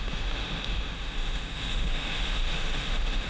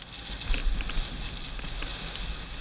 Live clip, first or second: second